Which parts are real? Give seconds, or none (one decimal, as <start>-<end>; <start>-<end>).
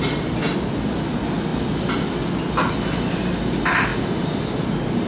0.0-5.1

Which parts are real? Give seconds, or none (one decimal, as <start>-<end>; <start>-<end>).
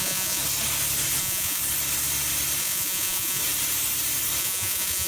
0.4-1.2; 1.6-2.6; 3.4-4.4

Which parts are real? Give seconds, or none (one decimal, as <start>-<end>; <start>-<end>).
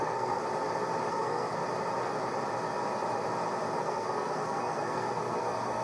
0.4-1.1; 1.6-3.8